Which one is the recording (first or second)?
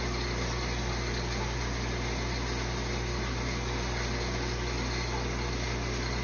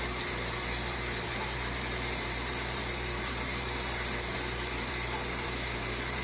first